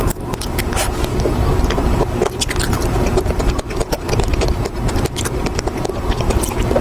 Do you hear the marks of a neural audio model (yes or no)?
no